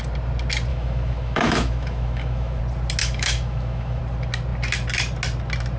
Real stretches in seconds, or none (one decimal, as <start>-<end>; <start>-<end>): 0.0-0.7; 2.6-3.0; 4.0-5.8